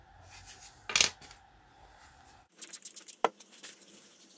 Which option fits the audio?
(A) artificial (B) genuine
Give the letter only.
B